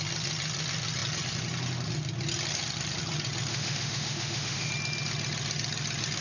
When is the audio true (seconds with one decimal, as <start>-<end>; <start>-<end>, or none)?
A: 0.0-3.5; 4.7-6.2

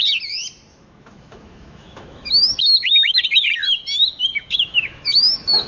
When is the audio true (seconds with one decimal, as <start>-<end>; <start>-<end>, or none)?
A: 0.0-0.7; 3.2-4.3

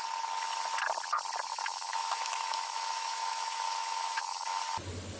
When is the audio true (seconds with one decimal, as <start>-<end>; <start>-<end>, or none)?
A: 0.0-1.5; 4.6-5.2

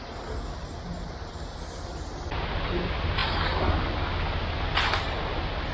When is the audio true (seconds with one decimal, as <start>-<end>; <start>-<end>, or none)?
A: 0.0-5.7

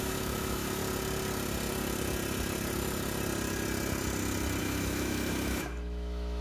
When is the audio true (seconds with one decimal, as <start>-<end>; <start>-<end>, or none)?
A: 0.8-4.6

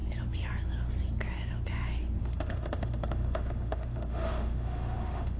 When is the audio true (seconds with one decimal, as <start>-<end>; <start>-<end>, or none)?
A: 0.0-2.2